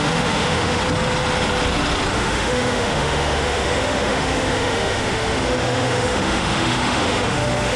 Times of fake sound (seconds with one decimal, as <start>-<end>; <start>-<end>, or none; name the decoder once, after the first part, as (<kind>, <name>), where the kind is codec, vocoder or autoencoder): 0.0-0.8 (autoencoder, DAC-VAE); 2.1-7.8